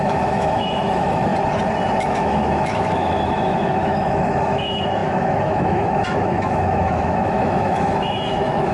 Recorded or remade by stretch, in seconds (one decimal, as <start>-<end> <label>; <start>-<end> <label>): 0.0-1.3 remade; 1.3-2.0 recorded; 2.0-8.7 remade